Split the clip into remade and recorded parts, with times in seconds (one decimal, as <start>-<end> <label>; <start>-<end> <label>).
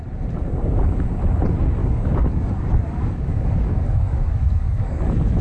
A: 0.0-1.8 recorded; 1.8-5.0 remade; 5.0-5.4 recorded